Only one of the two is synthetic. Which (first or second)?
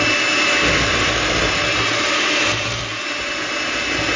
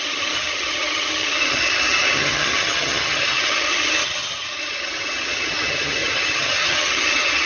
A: second